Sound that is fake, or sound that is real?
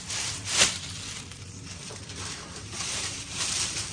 fake